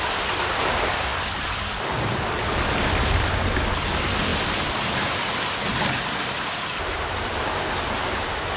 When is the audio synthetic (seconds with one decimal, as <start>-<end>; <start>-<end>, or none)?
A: none